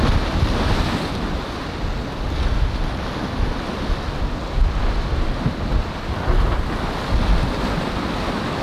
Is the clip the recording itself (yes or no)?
yes